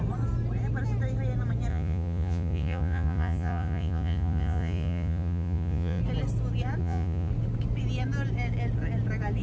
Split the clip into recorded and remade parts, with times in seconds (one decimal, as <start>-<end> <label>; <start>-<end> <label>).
0.0-1.7 recorded; 1.7-6.0 remade; 6.0-6.8 recorded; 6.8-7.3 remade; 7.3-9.4 recorded